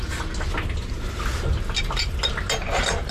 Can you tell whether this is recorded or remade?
recorded